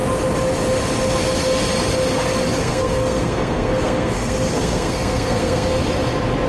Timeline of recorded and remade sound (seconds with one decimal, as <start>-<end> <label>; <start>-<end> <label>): 0.0-2.6 recorded; 2.6-5.7 remade; 5.7-6.5 recorded